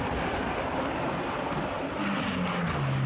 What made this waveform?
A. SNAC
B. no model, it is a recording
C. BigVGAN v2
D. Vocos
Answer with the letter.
B